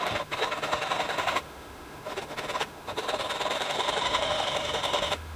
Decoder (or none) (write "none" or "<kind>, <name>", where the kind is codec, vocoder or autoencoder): autoencoder, DAC-VAE